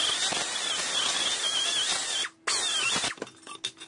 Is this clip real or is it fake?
real